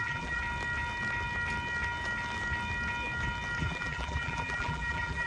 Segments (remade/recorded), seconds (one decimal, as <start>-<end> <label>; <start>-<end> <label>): 0.0-0.4 remade; 0.4-3.6 recorded; 3.6-5.3 remade